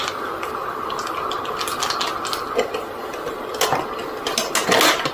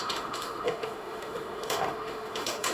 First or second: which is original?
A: first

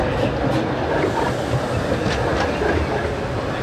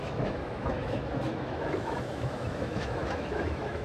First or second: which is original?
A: first